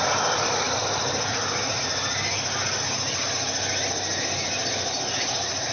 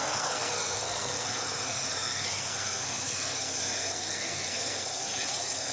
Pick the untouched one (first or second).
first